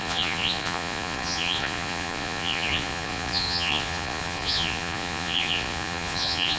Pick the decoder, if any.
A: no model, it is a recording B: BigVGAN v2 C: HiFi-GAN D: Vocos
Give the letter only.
D